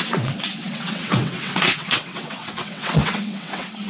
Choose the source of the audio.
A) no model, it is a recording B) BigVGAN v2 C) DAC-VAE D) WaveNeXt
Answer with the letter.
D